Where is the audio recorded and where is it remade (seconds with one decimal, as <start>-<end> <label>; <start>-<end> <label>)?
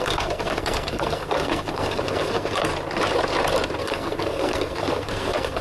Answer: 0.0-2.7 remade; 2.7-3.8 recorded; 3.8-5.6 remade